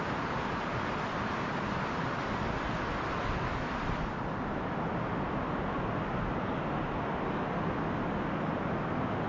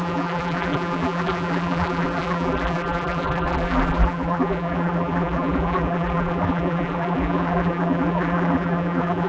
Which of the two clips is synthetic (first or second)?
second